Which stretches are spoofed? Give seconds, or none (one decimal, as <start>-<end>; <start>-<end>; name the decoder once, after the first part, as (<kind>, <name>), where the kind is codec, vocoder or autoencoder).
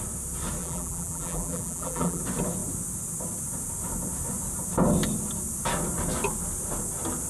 0.6-2.2 (vocoder, BigVGAN v2)